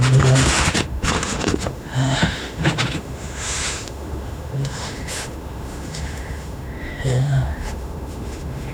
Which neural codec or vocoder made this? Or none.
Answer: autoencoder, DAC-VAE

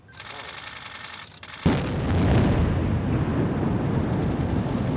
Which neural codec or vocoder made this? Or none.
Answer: none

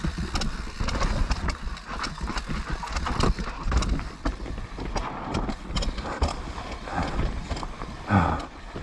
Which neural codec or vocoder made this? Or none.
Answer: none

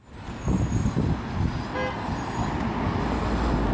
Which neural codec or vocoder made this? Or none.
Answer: none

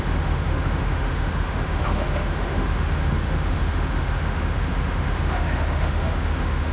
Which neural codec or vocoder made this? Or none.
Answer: autoencoder, DAC-VAE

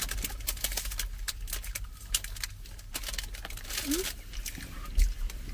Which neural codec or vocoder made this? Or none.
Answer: none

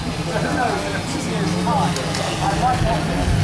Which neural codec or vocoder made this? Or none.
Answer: none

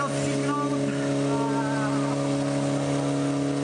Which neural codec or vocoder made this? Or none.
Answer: none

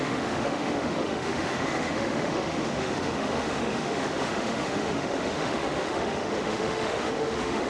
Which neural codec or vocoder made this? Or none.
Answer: autoencoder, DAC-VAE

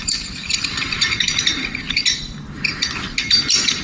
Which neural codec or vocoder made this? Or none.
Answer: none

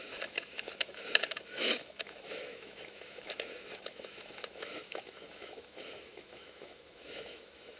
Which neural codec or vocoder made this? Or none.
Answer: autoencoder, DAC-VAE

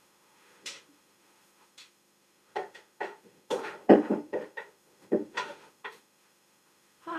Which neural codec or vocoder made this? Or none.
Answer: autoencoder, DAC-VAE